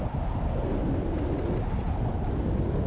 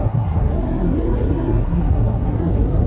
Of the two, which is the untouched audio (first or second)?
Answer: first